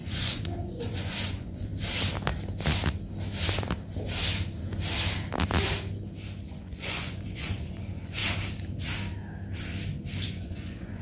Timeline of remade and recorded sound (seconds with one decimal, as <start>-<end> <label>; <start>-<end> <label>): 0.0-1.7 remade; 1.7-6.5 recorded; 6.5-8.2 remade; 8.2-10.2 recorded; 10.2-11.0 remade